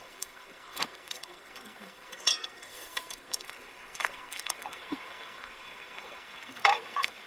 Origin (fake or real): fake